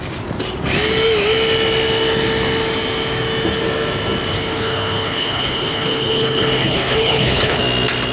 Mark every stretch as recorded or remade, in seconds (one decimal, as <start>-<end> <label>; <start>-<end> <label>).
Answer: 0.0-4.3 recorded; 4.3-7.6 remade; 7.6-8.1 recorded